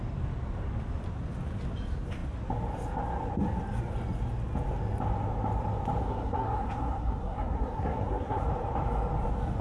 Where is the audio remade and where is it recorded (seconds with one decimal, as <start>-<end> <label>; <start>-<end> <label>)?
0.0-6.0 recorded; 6.0-8.4 remade; 8.4-9.6 recorded